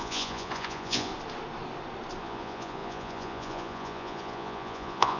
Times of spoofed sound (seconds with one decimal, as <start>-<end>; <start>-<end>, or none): 0.0-1.1; 2.2-5.2

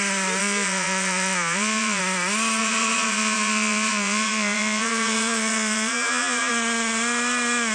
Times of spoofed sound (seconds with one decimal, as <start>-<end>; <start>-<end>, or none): 0.4-2.0; 2.6-6.5